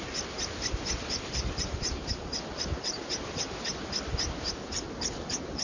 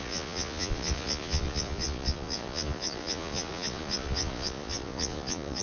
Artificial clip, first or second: second